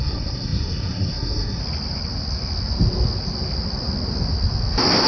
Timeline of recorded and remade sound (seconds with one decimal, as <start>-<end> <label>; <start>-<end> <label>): 0.0-1.6 remade; 1.6-5.1 recorded